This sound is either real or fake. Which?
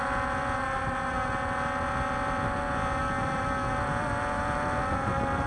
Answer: real